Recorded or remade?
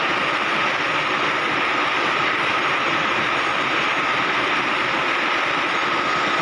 recorded